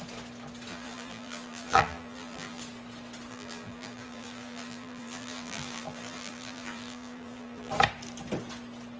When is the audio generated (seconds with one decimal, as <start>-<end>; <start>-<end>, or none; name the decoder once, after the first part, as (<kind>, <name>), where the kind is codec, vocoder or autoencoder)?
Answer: 0.7-2.6 (vocoder, BigVGAN v2); 3.3-7.7